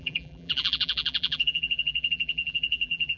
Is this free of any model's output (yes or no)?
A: no